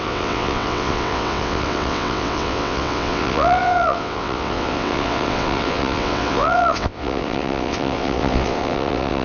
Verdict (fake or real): fake